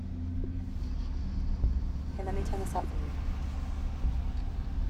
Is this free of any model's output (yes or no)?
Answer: yes